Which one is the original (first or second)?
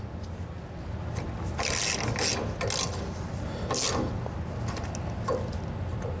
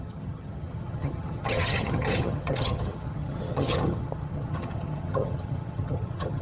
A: first